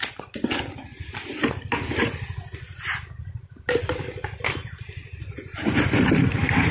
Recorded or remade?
recorded